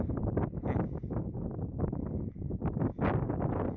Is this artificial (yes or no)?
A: no